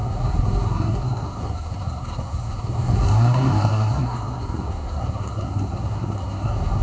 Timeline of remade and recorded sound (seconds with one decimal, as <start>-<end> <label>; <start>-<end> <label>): 0.0-6.8 remade